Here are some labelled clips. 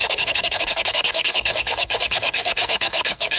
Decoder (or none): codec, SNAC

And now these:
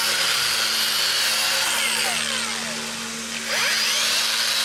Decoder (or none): none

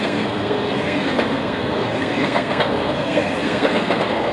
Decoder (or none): codec, SNAC